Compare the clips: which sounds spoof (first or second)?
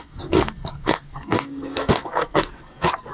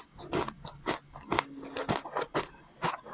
first